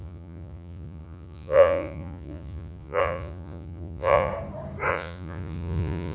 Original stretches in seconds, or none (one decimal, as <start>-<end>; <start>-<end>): 4.3-4.9